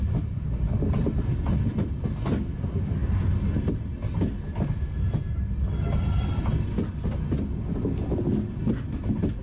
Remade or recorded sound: recorded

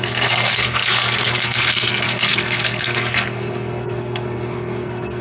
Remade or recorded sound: remade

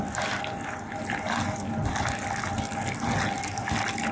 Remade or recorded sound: recorded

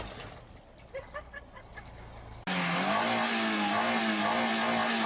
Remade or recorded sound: recorded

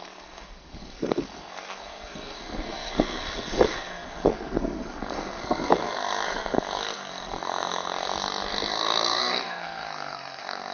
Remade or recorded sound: remade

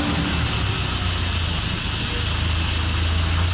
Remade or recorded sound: recorded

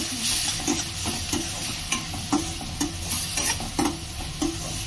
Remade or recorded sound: recorded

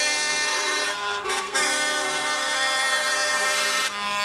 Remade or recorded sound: remade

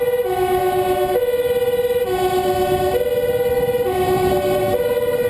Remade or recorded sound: recorded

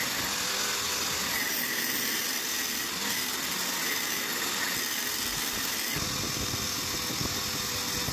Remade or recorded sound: recorded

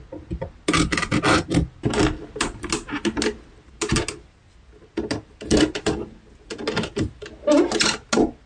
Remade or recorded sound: recorded